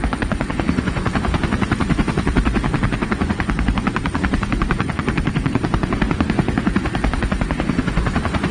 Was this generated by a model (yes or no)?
yes